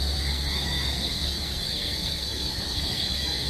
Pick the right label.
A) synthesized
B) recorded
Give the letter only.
A